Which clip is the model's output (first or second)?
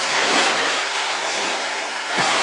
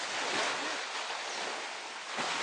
first